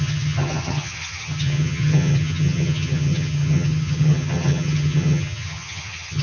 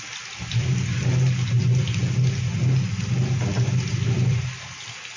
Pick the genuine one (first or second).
second